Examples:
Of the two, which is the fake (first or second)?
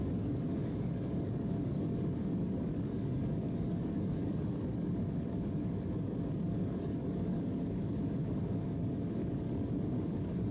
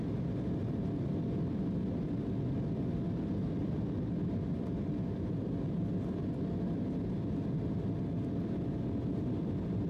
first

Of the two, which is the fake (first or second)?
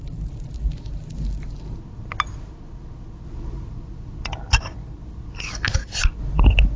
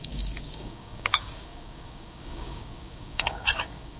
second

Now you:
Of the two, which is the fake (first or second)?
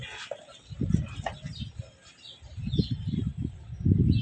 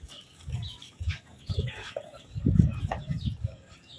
second